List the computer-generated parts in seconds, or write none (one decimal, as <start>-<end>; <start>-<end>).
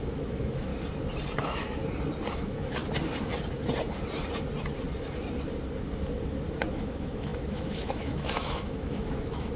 0.0-0.7; 1.4-1.8; 2.3-2.8; 6.7-9.6